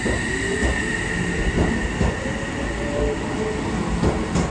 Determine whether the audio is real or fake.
real